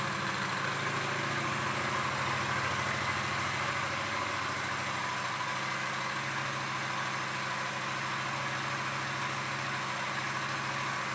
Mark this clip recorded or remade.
recorded